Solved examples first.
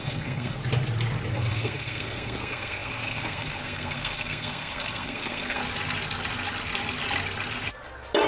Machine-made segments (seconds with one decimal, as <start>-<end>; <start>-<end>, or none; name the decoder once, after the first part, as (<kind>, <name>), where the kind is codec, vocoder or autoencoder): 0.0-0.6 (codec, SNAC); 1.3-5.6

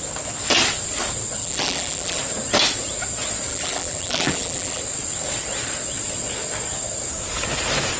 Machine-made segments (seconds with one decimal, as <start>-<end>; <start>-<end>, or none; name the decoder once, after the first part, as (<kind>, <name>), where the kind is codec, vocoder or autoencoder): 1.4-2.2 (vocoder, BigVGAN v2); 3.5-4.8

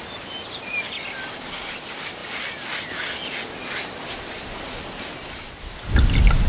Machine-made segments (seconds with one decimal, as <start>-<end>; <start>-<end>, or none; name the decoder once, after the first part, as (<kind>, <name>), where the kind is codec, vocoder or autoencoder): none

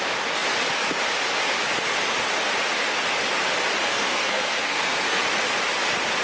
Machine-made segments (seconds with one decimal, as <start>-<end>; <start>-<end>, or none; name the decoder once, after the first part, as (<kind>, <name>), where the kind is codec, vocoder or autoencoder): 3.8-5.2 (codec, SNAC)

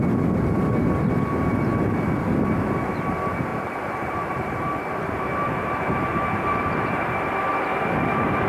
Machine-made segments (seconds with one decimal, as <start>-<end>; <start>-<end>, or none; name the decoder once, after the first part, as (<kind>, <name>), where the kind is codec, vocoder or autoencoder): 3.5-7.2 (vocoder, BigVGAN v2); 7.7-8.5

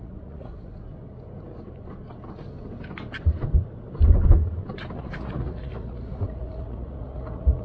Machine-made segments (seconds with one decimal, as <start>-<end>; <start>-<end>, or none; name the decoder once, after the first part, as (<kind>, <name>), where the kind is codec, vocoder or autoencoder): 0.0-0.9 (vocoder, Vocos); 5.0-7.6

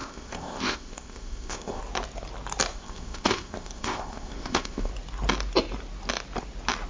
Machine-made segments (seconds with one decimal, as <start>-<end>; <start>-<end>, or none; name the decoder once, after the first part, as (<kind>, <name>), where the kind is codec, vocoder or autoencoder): 0.0-1.8 (codec, ZipCodec); 2.7-4.9